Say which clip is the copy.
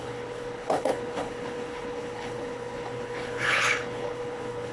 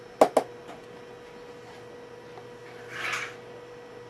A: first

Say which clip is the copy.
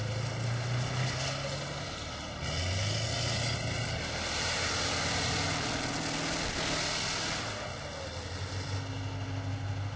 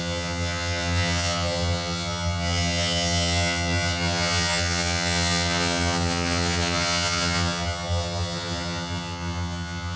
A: second